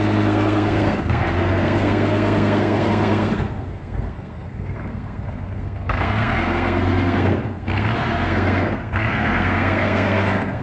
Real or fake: fake